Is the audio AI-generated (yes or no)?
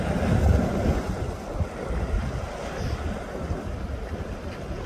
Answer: no